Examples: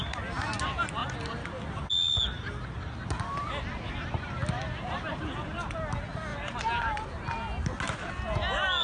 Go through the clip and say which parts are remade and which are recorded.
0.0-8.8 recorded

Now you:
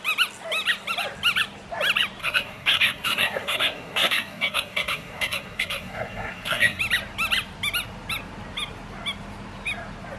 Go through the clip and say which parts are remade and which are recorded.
0.0-2.2 recorded; 2.2-6.8 remade; 6.8-10.2 recorded